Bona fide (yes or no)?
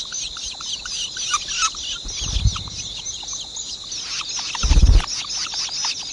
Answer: yes